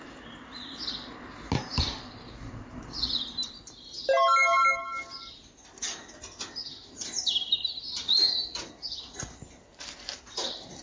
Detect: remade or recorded recorded